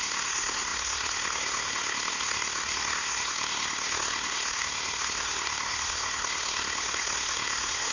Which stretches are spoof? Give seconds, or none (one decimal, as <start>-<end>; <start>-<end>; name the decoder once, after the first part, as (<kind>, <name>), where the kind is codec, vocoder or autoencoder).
0.0-7.9 (codec, SNAC)